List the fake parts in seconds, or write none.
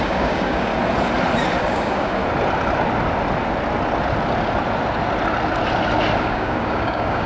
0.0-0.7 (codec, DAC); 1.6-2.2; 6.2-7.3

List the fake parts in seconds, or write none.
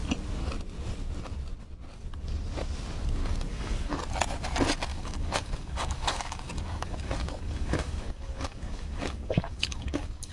3.5-4.0 (codec, DAC); 4.9-10.3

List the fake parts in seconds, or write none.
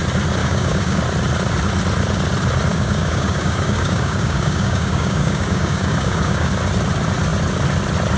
0.4-1.0 (codec, DAC); 2.7-6.5